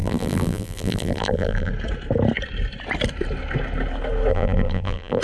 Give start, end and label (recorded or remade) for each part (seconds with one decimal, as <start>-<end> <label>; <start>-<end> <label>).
0.0-1.7 remade; 1.7-4.3 recorded; 4.3-5.2 remade